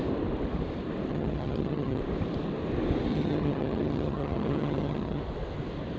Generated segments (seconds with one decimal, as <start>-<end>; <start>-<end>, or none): 1.1-2.0; 3.1-5.2